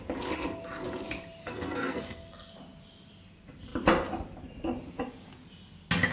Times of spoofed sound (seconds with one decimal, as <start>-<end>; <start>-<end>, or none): 1.4-2.5